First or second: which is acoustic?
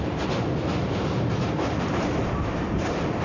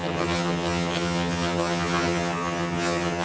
first